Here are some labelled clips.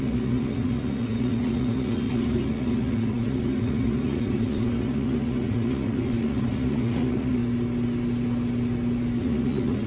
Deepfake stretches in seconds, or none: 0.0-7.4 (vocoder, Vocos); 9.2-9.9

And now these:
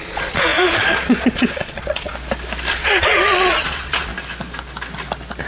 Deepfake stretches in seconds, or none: 0.0-2.1 (vocoder, Vocos); 2.7-4.1

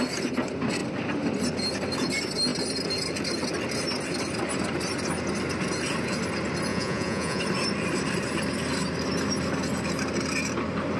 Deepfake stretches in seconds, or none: 6.7-7.4 (vocoder, Vocos)